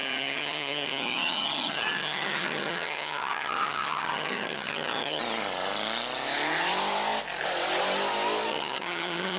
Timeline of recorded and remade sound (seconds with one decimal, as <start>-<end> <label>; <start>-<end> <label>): 0.0-5.2 remade; 5.2-8.5 recorded; 8.5-9.4 remade